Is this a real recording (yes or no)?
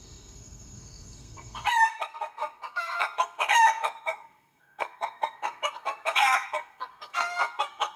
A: no